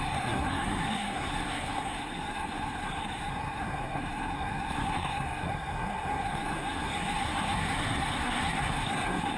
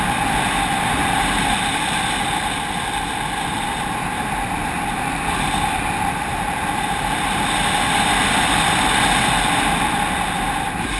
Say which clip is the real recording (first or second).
second